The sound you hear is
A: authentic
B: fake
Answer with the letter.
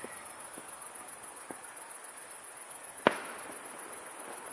A